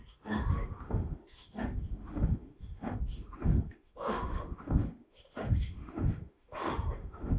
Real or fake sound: fake